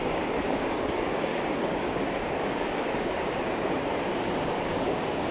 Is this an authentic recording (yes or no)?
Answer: no